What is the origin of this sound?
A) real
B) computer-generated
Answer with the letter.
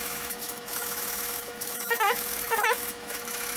B